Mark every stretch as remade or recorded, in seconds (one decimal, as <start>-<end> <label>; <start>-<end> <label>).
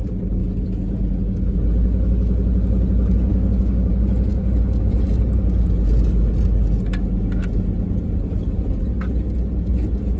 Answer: 0.0-3.3 recorded; 3.3-3.9 remade; 3.9-10.2 recorded